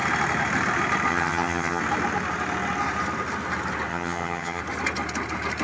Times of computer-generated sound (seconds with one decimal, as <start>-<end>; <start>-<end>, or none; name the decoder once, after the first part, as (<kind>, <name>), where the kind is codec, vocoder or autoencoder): 1.1-1.8 (vocoder, HiFi-GAN); 3.9-4.6